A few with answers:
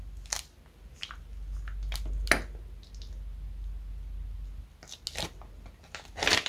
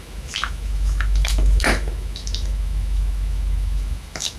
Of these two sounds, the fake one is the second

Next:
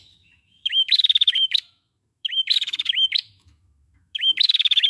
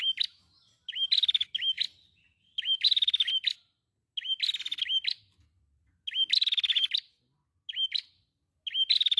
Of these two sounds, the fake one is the first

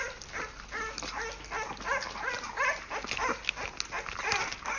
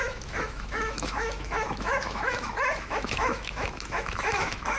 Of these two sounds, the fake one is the second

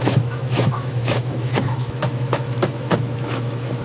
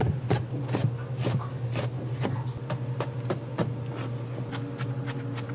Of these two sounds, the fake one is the first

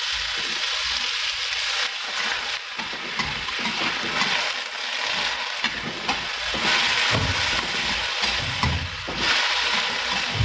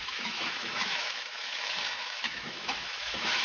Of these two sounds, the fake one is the second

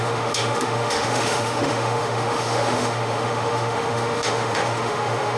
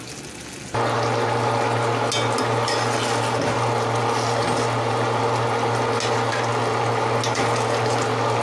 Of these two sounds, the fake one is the first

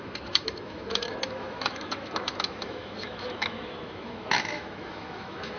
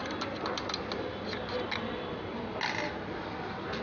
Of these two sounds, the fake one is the first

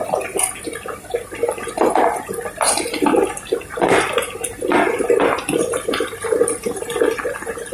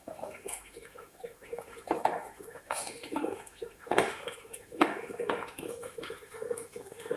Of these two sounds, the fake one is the second